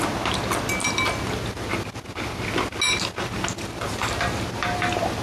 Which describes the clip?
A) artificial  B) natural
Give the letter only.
B